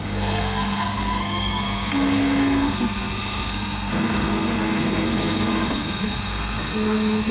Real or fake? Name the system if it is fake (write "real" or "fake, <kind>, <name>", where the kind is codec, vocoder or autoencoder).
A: fake, codec, SNAC